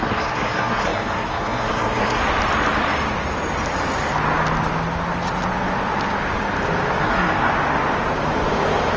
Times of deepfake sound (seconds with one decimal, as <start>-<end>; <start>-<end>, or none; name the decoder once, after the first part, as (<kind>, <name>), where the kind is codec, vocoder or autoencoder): 0.0-2.2 (codec, SNAC); 7.0-7.5